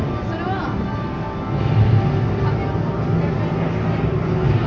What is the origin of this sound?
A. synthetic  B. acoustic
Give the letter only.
B